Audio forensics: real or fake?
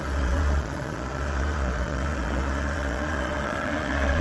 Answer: fake